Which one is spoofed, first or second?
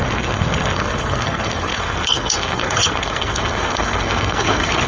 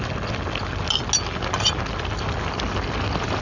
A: first